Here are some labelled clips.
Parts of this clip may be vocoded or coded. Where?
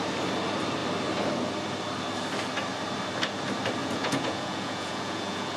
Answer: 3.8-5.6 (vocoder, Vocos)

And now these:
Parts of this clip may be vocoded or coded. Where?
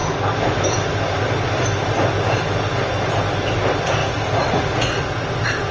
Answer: 4.0-5.0 (vocoder, Vocos)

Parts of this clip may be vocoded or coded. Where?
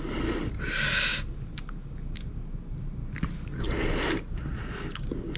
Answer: none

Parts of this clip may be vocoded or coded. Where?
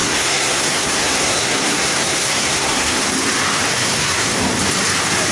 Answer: 0.0-3.0 (codec, SNAC); 3.7-4.4